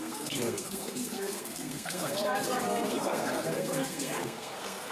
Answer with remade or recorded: remade